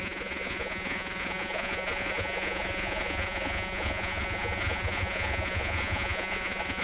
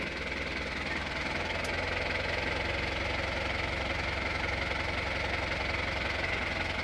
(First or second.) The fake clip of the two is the first